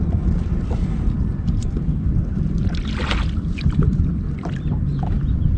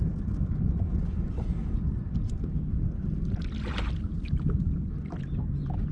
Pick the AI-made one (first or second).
first